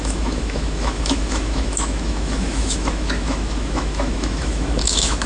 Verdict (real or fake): fake